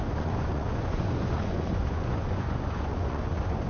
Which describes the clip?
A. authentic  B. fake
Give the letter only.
B